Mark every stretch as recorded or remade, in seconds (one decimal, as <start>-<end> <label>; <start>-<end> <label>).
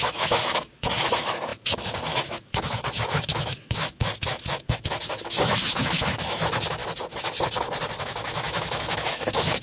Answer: 0.0-6.8 remade; 6.8-8.0 recorded; 8.0-9.6 remade